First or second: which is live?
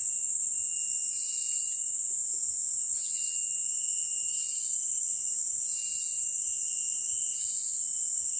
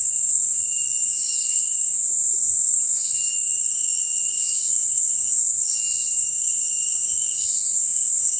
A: first